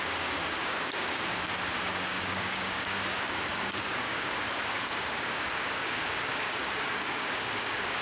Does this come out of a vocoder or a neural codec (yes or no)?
yes